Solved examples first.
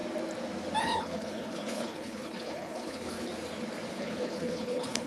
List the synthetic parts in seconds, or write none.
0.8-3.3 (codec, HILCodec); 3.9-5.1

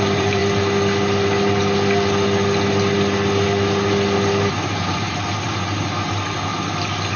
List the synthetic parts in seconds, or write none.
0.0-0.4 (vocoder, BigVGAN v2); 4.5-6.5